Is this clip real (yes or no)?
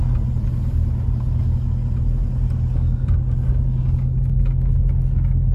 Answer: yes